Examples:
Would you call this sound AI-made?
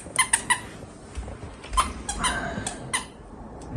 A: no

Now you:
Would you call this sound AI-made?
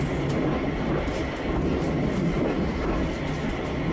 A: no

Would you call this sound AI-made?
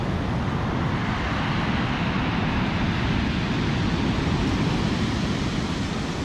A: no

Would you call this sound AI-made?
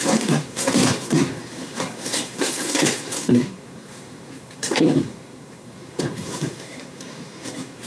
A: yes